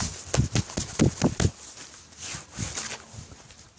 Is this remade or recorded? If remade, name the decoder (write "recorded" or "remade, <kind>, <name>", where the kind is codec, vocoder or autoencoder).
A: recorded